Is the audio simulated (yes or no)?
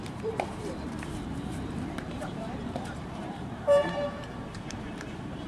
yes